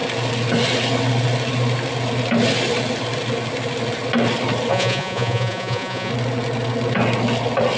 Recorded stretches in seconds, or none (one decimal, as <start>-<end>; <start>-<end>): 0.0-4.7; 6.1-7.8